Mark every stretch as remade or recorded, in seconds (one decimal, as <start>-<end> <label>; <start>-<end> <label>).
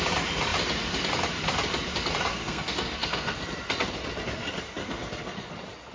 0.0-2.3 recorded; 2.3-3.4 remade; 3.4-4.8 recorded; 4.8-5.5 remade; 5.5-5.9 recorded